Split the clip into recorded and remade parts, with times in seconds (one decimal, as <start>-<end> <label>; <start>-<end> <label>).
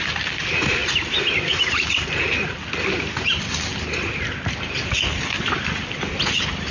0.0-0.8 recorded; 0.8-2.6 remade; 2.6-6.7 recorded